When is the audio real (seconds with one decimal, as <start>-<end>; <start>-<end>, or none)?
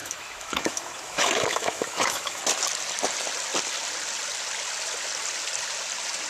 2.4-6.3